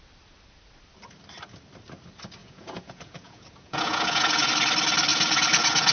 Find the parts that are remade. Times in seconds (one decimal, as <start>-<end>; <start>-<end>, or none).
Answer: 2.4-4.5; 5.1-5.9